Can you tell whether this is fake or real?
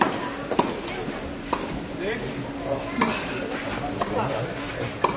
real